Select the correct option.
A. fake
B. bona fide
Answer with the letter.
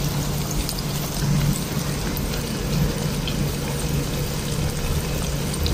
B